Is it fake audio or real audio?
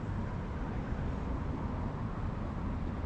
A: real